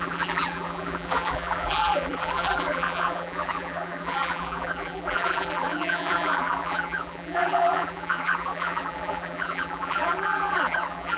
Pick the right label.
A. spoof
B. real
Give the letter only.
A